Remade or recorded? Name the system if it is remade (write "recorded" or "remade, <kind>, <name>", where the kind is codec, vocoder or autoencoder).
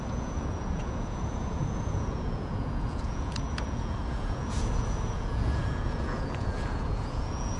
remade, vocoder, Vocos